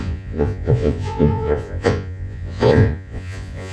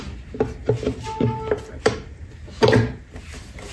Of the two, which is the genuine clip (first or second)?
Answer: second